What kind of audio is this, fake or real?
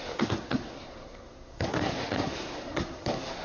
fake